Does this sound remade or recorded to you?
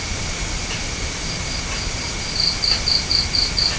recorded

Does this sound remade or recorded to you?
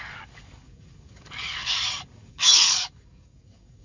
remade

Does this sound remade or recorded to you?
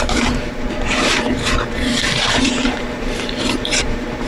remade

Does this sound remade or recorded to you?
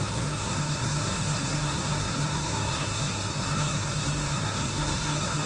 remade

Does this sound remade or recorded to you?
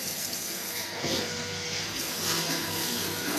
remade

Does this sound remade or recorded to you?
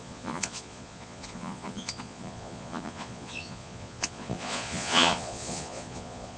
remade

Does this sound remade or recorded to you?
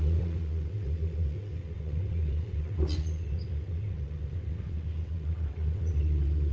remade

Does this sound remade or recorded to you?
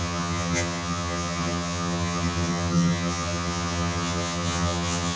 remade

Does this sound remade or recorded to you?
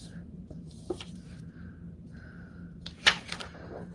remade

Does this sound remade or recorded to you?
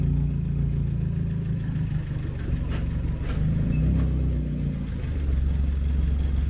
recorded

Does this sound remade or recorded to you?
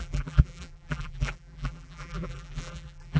remade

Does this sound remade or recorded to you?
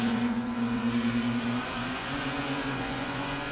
remade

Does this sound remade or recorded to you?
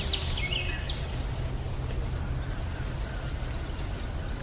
recorded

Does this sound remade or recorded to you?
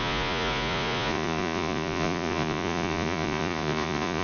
remade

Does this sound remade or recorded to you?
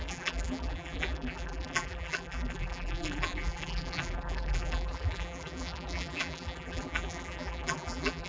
remade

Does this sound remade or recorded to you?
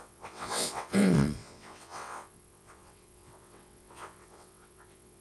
remade